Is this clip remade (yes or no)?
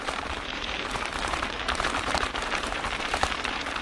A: yes